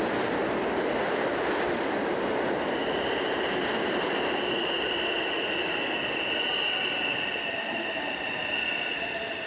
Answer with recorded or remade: recorded